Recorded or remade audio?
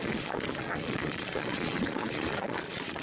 remade